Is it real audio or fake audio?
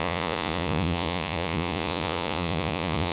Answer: fake